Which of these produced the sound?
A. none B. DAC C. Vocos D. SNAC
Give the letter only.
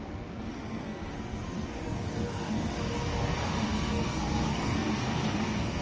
D